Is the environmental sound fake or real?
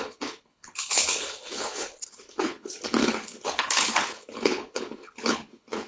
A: fake